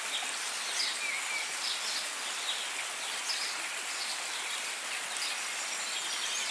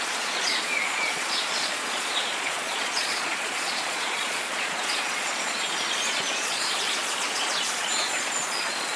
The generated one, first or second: second